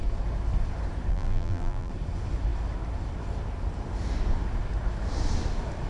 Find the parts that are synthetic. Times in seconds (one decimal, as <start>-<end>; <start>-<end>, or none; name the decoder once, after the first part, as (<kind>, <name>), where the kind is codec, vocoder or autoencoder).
1.1-1.9 (vocoder, BigVGAN v2)